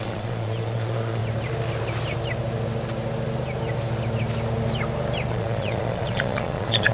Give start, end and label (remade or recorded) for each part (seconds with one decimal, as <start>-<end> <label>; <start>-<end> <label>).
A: 0.0-1.2 remade; 1.2-5.3 recorded; 5.3-6.9 remade

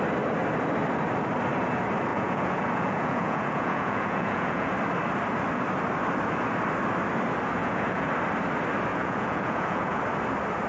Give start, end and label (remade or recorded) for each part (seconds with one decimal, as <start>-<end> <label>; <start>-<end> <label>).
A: 0.0-2.1 recorded; 2.1-4.7 remade; 4.7-7.6 recorded; 7.6-8.1 remade; 8.1-8.9 recorded; 8.9-10.0 remade; 10.0-10.7 recorded

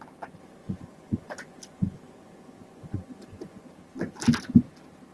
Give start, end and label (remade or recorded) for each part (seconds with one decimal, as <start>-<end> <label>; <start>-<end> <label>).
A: 0.0-0.6 recorded; 0.6-3.7 remade; 3.7-5.1 recorded

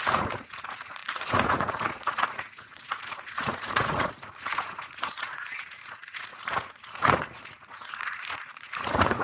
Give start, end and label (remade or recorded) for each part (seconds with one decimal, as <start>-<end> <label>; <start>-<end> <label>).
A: 0.0-9.2 remade

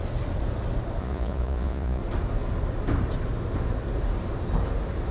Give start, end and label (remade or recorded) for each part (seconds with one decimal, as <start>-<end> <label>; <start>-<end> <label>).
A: 0.0-1.0 recorded; 1.0-2.0 remade; 2.0-5.1 recorded

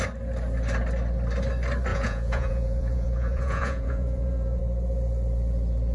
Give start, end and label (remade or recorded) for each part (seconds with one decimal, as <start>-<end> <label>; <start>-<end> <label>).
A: 0.0-1.9 recorded; 1.9-4.6 remade; 4.6-5.9 recorded

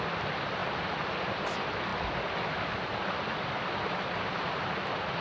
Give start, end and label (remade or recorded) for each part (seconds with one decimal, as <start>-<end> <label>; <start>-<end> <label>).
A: 0.0-5.2 recorded